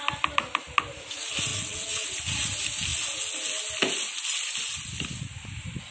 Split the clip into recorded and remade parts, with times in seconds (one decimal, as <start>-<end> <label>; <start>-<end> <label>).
0.0-1.5 recorded; 1.5-2.1 remade; 2.1-5.9 recorded